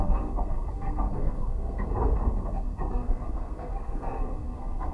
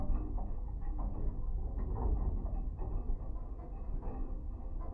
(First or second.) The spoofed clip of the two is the first